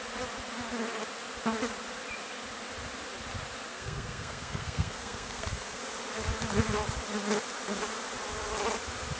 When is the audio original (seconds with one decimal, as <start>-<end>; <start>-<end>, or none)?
0.0-3.7; 5.8-9.2